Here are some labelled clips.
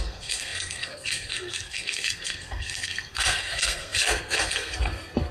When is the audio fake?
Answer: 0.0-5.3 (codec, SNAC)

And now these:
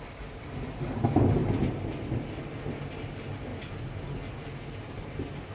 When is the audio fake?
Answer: none

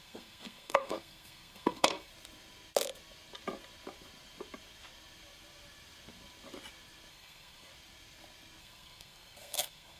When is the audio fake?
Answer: 0.0-2.1 (codec, SNAC); 7.1-7.7; 8.6-10.0